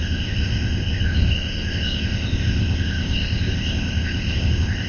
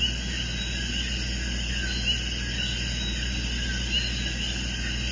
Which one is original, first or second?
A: second